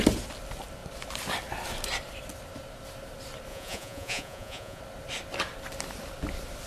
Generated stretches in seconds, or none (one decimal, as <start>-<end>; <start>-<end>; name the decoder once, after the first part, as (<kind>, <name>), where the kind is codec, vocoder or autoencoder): 3.5-4.8 (vocoder, Vocos)